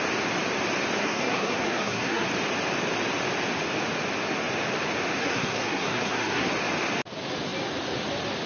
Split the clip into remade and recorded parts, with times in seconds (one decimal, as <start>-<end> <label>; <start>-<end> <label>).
0.0-1.0 recorded; 1.0-2.3 remade; 2.3-5.2 recorded; 5.2-6.5 remade; 6.5-8.5 recorded